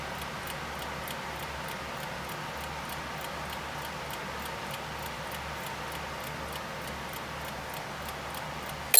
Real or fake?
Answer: real